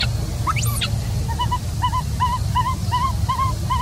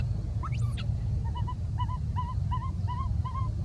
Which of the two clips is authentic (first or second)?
first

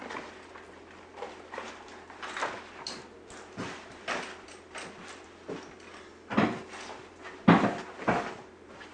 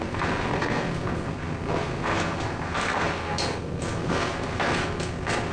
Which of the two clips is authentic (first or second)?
first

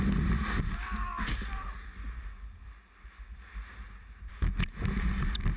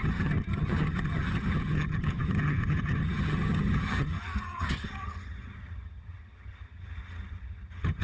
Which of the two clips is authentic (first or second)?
first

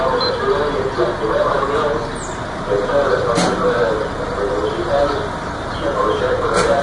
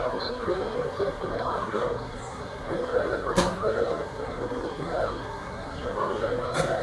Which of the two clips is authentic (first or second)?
first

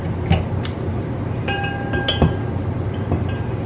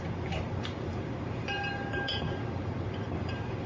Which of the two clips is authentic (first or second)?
first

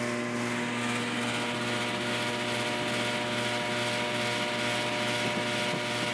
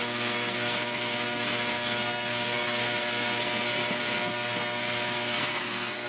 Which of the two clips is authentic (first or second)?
first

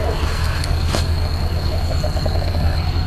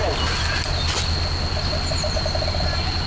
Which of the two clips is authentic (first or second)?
second